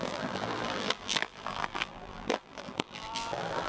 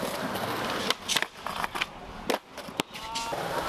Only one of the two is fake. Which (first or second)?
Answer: first